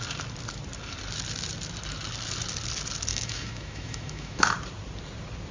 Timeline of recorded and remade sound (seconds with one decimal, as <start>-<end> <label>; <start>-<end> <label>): 0.0-3.1 recorded; 3.1-4.4 remade; 4.4-5.5 recorded

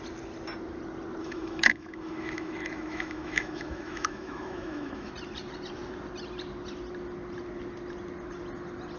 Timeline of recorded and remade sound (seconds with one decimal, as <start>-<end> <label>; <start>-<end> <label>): 0.0-1.2 recorded; 1.2-5.1 remade; 5.1-9.0 recorded

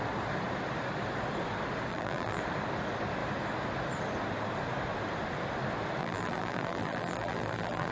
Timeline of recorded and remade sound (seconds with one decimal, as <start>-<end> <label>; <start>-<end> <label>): 0.0-1.9 recorded; 1.9-2.4 remade; 2.4-6.0 recorded; 6.0-7.9 remade

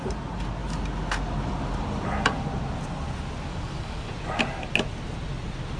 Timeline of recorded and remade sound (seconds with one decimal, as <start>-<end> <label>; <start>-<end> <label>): 0.0-3.5 recorded; 3.5-4.1 remade; 4.1-5.8 recorded

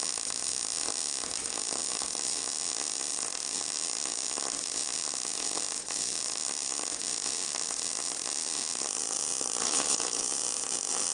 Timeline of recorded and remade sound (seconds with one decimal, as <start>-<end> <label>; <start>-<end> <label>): 0.0-9.6 recorded; 9.6-10.2 remade; 10.2-11.1 recorded